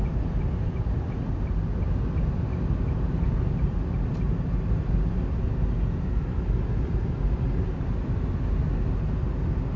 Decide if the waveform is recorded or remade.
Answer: recorded